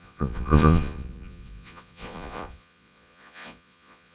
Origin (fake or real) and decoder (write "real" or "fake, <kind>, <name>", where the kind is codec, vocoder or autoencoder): fake, vocoder, Vocos